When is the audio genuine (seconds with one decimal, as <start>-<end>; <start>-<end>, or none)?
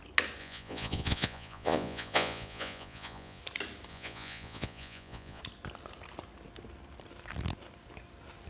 0.0-0.4; 3.4-3.9; 5.4-8.5